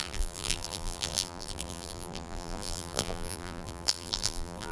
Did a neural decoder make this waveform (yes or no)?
yes